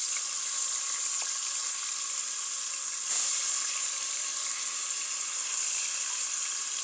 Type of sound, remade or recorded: recorded